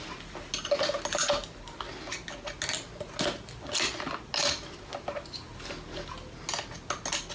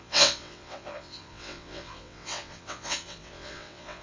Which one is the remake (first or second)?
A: second